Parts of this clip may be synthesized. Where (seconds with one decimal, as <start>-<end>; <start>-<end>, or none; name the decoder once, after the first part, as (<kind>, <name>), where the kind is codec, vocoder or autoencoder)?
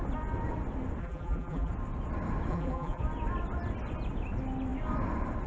1.0-1.7 (vocoder, BigVGAN v2); 2.5-3.0